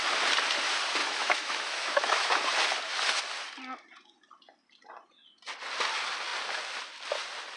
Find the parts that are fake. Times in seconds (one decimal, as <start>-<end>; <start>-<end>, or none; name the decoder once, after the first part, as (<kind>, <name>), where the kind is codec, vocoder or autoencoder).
1.0-2.4 (autoencoder, DAC-VAE)